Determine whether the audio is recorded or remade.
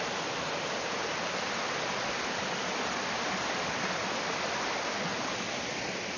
recorded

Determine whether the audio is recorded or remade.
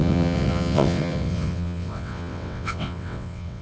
remade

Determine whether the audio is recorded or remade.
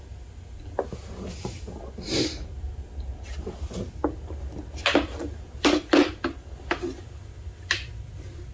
recorded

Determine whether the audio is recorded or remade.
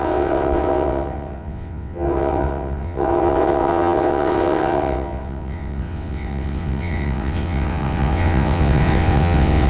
remade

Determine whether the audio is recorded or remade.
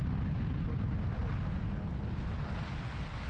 recorded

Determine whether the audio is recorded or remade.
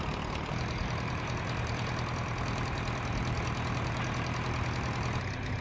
recorded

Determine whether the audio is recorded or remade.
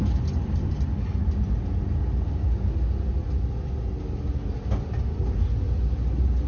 recorded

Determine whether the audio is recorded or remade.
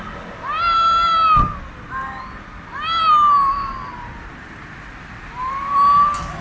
recorded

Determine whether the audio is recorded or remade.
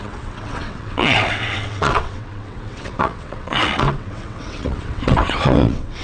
remade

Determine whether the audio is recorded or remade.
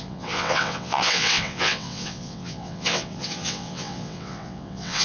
remade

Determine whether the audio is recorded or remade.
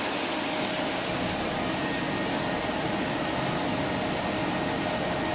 recorded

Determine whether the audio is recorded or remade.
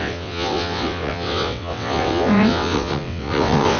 remade